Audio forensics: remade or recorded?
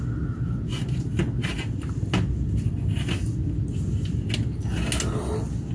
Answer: recorded